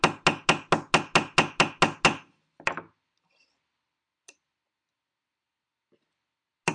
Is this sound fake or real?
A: real